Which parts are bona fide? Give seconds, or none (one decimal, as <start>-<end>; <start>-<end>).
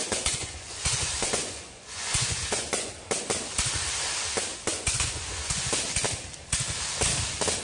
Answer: 2.9-4.7; 5.7-7.6